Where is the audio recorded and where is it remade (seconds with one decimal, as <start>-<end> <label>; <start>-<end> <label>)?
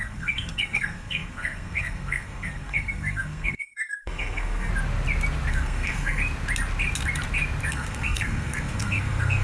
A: 0.0-4.7 remade; 4.7-5.5 recorded; 5.5-6.2 remade; 6.2-7.7 recorded; 7.7-9.4 remade